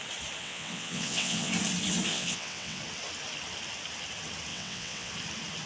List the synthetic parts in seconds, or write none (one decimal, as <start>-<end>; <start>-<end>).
0.4-1.5; 2.1-2.8; 4.5-5.1

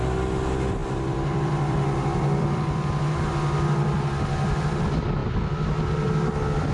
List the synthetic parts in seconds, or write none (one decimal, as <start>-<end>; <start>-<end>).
0.8-3.3; 5.2-5.8

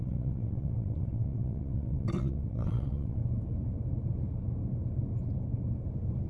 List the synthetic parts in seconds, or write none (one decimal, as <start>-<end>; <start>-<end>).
0.0-3.2

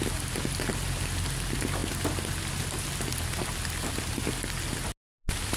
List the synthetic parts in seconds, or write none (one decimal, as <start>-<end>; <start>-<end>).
none

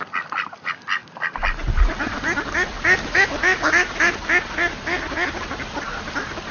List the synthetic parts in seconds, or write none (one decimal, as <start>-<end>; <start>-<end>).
none

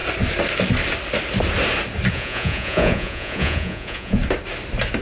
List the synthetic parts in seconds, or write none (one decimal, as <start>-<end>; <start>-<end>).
2.1-4.2